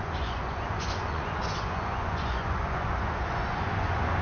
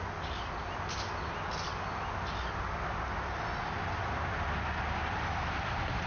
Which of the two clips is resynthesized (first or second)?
first